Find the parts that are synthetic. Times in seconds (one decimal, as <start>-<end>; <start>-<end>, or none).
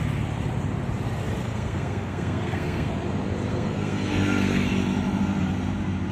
1.4-2.9; 3.5-4.7